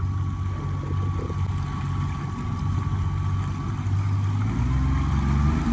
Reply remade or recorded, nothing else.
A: recorded